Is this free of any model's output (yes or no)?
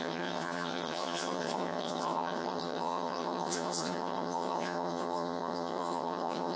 no